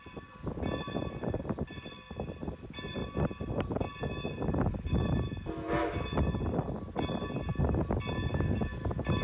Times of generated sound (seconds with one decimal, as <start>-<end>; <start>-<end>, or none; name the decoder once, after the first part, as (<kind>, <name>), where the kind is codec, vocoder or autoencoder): none